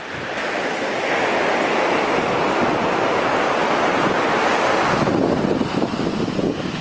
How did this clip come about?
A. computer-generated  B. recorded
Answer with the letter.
B